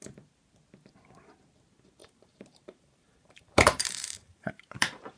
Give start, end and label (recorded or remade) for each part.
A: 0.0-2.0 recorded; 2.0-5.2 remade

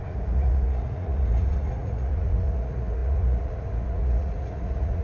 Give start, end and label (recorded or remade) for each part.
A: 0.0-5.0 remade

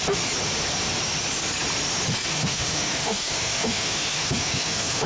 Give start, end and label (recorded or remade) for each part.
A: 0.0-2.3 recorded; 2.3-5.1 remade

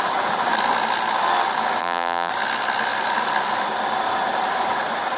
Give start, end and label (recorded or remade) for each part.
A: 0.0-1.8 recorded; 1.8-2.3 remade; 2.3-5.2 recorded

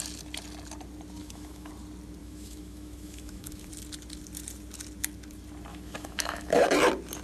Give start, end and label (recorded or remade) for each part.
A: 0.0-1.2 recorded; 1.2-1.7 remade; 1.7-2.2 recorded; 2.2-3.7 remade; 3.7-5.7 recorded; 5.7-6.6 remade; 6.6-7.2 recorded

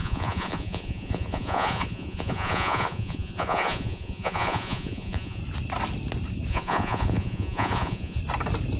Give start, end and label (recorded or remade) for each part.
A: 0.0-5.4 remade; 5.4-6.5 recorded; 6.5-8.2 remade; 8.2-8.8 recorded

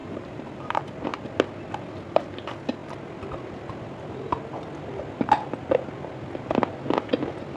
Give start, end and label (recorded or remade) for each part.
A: 0.0-0.8 remade; 0.8-7.6 recorded